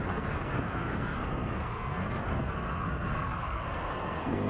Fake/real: fake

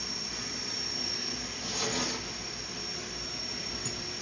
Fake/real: real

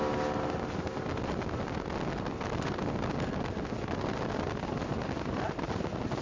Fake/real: real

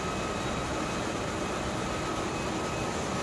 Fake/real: real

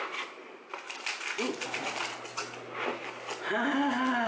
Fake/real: real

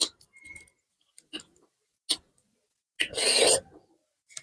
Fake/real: real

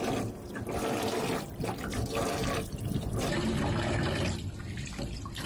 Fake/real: real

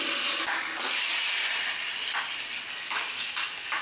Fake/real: real